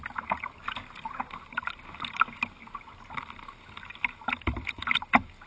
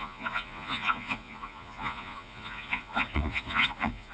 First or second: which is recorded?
first